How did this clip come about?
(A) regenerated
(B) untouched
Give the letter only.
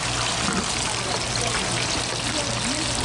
B